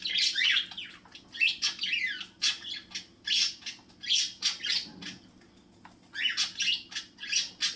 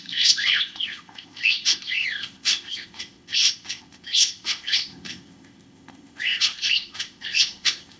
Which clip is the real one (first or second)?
first